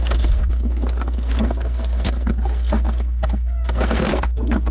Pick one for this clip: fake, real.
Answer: fake